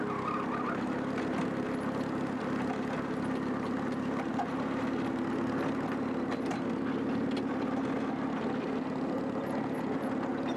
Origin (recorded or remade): recorded